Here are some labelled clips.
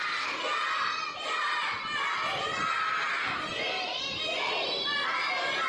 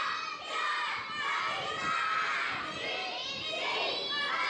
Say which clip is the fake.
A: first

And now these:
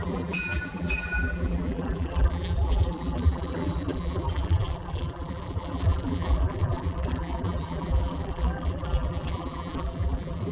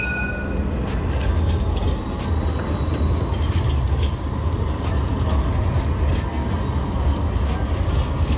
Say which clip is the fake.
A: first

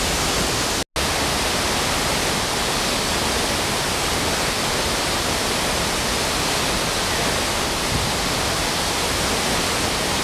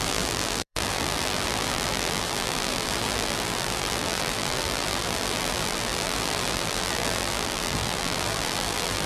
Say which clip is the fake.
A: second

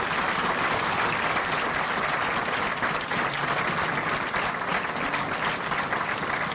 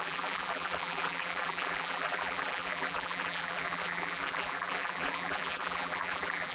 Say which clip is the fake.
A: second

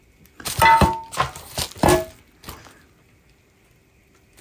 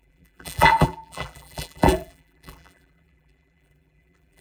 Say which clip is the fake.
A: second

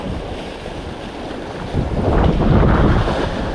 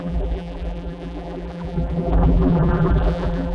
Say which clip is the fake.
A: second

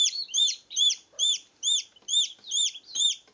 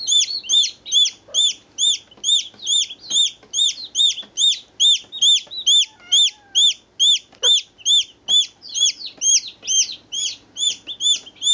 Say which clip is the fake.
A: first